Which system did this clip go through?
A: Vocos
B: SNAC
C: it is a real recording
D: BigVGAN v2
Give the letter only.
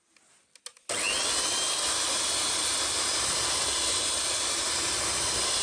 C